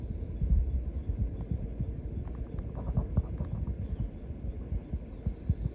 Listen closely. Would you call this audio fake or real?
real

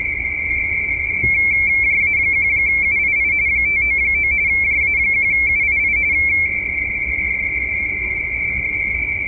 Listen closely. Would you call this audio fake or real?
real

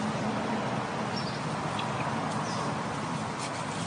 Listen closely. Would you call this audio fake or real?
real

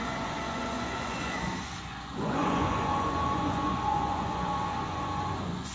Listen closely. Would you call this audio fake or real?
fake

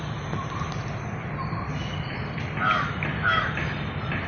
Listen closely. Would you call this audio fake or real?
real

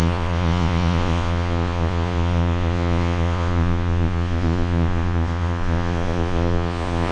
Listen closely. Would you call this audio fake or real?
fake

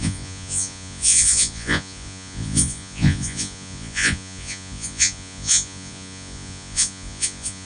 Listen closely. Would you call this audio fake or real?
fake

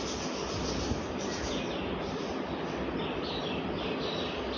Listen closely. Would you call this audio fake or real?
real